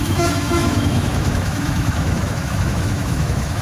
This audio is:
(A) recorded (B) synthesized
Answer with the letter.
B